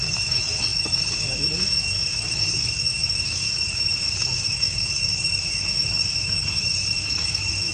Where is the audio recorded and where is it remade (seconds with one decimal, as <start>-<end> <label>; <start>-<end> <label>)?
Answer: 0.0-7.7 remade